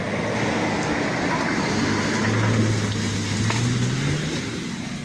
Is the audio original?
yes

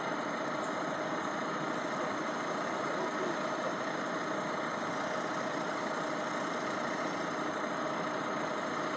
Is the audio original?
yes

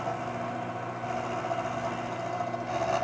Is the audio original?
yes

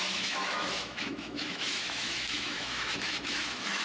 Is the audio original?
no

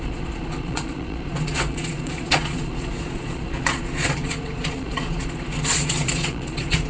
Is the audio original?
no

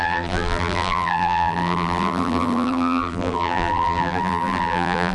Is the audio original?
no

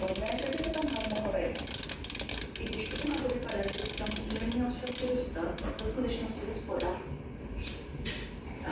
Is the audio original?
yes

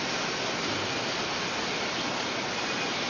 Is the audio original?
yes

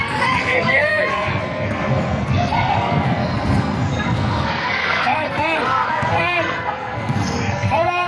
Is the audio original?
no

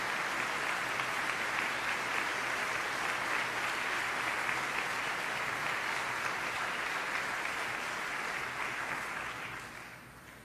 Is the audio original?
yes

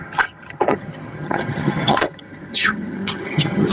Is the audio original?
no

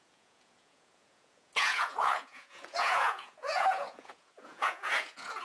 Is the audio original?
no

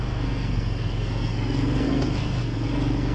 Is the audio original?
no